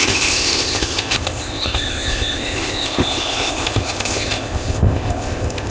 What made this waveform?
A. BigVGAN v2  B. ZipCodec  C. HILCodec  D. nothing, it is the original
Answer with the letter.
B